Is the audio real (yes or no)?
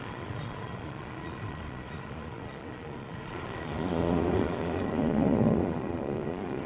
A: no